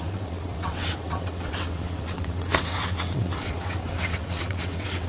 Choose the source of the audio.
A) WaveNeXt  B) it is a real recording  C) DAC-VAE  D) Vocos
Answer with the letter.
A